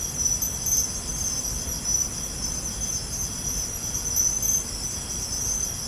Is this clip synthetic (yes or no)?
no